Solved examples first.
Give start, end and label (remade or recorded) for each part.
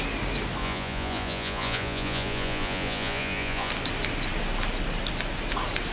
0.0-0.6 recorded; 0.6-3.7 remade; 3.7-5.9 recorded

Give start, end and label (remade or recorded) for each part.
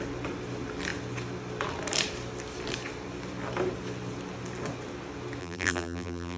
0.0-5.4 recorded; 5.4-6.4 remade